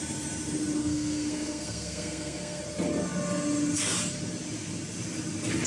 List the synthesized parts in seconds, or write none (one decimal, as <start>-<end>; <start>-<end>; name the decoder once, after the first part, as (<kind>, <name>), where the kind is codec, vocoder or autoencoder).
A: 0.8-2.6 (codec, SNAC)